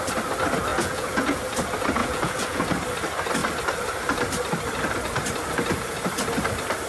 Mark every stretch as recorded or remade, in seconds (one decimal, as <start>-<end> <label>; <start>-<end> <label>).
0.0-0.7 recorded; 0.7-1.4 remade; 1.4-2.0 recorded; 2.0-2.6 remade; 2.6-6.9 recorded